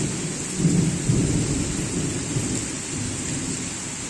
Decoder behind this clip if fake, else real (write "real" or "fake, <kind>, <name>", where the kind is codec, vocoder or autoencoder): real